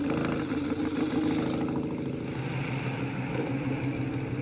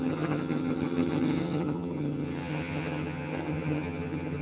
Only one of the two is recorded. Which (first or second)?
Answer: first